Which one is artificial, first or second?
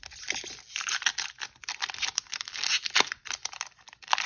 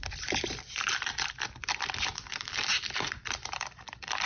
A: second